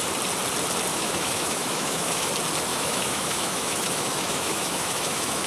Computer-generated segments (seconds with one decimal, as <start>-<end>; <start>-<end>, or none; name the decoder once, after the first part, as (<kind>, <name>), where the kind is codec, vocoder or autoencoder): 0.9-2.3 (autoencoder, DAC-VAE); 2.7-5.5